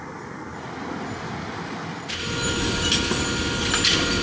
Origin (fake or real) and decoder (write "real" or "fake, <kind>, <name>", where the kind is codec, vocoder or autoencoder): real